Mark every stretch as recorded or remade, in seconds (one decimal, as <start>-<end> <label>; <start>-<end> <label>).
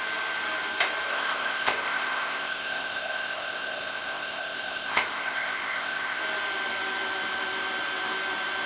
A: 0.0-1.1 recorded; 1.1-6.2 remade; 6.2-8.7 recorded